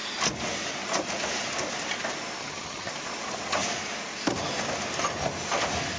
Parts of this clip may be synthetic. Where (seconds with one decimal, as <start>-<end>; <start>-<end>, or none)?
2.4-2.9